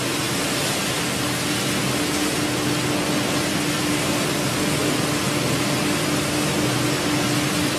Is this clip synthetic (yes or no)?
no